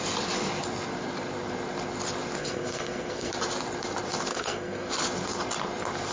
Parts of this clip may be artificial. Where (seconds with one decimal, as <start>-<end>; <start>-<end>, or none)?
2.4-3.3; 4.3-4.9